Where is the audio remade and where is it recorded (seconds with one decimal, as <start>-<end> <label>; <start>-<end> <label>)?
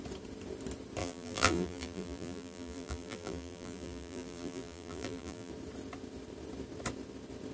0.0-1.0 recorded; 1.0-5.5 remade; 5.5-7.5 recorded